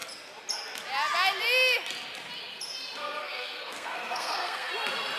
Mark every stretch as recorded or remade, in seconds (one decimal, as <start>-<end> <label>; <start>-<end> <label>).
0.0-3.0 recorded; 3.0-4.7 remade; 4.7-5.2 recorded